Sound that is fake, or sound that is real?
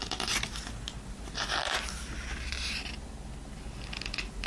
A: real